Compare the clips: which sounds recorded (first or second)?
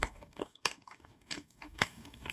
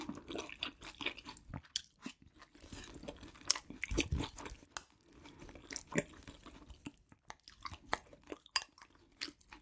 second